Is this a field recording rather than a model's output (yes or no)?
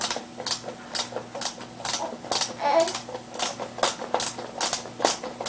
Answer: yes